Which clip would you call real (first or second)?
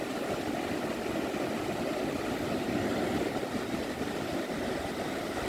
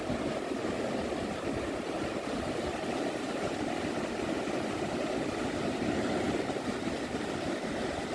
first